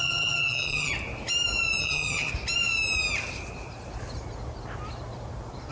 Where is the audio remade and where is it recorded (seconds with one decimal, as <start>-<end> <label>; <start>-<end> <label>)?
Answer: 0.0-0.9 remade; 0.9-1.8 recorded; 1.8-2.3 remade; 2.3-5.7 recorded